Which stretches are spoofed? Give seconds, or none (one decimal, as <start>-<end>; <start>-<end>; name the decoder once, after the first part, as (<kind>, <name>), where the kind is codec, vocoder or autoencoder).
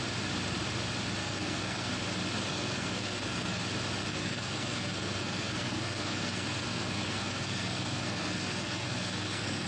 1.2-1.9 (codec, SNAC); 2.5-3.6; 4.0-9.7